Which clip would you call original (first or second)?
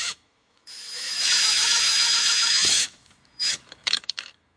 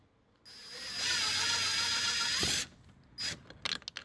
second